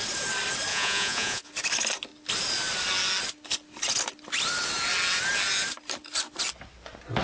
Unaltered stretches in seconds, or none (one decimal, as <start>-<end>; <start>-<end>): 0.0-0.7; 1.5-7.2